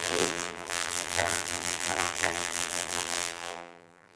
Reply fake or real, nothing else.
fake